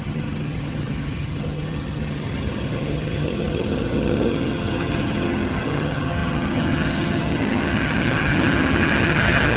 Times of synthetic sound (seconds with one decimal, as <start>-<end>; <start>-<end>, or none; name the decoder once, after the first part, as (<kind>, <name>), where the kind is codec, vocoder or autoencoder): 0.0-9.6 (vocoder, HiFi-GAN)

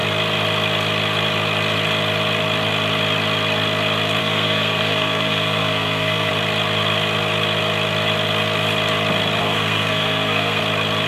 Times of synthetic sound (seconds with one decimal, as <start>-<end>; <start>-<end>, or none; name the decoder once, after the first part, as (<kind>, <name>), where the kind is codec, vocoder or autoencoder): 4.2-6.3 (codec, SNAC); 9.4-10.6

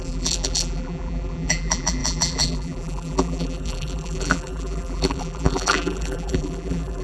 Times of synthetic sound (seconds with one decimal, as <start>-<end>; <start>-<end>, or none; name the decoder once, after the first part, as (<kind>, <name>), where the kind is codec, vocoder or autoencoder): 0.0-7.0 (vocoder, BigVGAN v2)

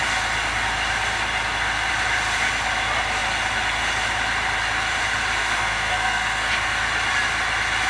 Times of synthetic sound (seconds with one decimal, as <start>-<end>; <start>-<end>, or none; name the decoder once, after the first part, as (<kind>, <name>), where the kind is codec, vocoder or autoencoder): 5.4-6.5 (codec, SNAC)

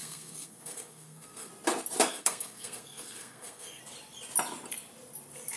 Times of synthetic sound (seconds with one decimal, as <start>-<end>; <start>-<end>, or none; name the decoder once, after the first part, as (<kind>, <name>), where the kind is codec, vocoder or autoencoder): 0.0-1.5 (codec, SNAC); 2.1-3.8

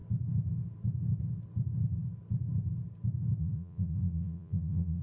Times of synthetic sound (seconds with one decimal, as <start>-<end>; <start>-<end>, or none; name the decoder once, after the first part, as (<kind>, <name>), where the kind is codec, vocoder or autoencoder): 3.4-5.0 (vocoder, Vocos)